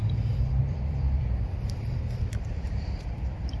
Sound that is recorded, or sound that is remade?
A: remade